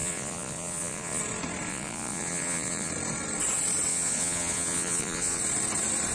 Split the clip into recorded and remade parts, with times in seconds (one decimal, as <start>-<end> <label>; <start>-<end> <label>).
0.0-1.2 remade; 1.2-1.7 recorded; 1.7-2.9 remade; 2.9-3.9 recorded; 3.9-5.4 remade; 5.4-6.1 recorded

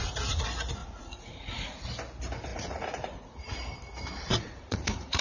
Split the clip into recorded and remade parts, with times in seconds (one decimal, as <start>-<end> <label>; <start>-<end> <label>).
0.0-0.8 recorded; 0.8-1.8 remade; 1.8-2.5 recorded; 2.5-3.4 remade; 3.4-4.3 recorded; 4.3-5.2 remade

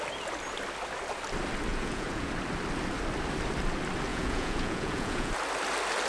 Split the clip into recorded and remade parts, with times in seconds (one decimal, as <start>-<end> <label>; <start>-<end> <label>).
0.0-1.7 recorded; 1.7-2.3 remade; 2.3-4.1 recorded; 4.1-5.3 remade; 5.3-6.1 recorded

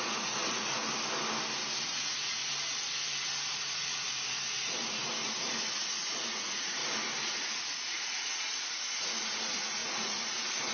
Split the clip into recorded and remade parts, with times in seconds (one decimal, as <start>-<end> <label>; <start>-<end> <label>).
0.0-0.8 remade; 0.8-1.8 recorded; 1.8-2.4 remade; 2.4-3.5 recorded; 3.5-6.8 remade; 6.8-7.4 recorded; 7.4-10.7 remade

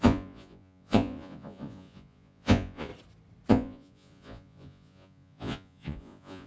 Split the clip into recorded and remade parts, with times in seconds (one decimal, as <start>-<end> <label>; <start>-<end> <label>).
0.0-2.9 remade; 2.9-3.5 recorded; 3.5-6.5 remade